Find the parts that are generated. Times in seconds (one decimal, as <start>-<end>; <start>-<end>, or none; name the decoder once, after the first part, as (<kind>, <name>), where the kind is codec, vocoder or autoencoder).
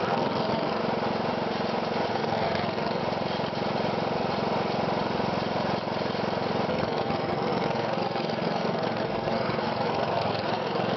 0.0-0.8 (codec, SNAC); 2.1-3.0; 6.7-11.0